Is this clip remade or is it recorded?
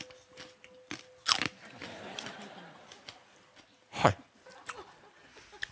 recorded